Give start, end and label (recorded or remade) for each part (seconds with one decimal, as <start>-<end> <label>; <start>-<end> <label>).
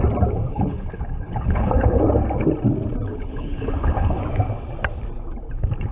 0.0-0.5 recorded; 0.5-2.0 remade; 2.0-3.1 recorded; 3.1-4.2 remade; 4.2-5.9 recorded